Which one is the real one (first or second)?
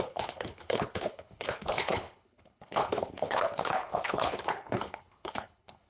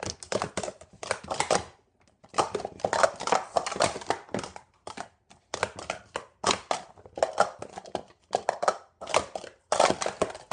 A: second